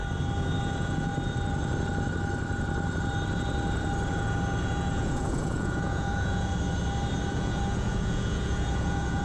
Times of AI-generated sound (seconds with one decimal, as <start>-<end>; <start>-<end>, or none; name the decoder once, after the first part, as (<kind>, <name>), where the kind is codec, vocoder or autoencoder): 0.6-1.1 (vocoder, Vocos); 4.1-6.5; 7.3-9.2